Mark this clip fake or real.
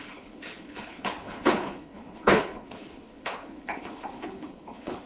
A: fake